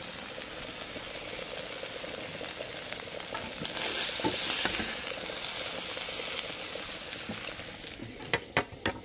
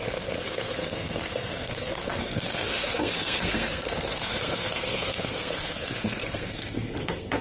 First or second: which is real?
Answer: first